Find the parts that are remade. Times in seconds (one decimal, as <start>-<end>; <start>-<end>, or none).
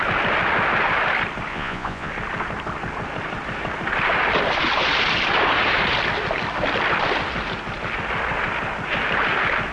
1.5-2.1